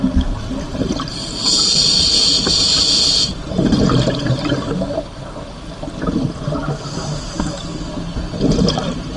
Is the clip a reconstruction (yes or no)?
no